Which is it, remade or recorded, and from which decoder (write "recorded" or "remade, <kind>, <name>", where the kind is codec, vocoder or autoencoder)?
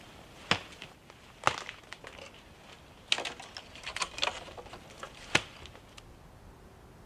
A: recorded